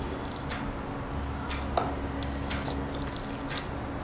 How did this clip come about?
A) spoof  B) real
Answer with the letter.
B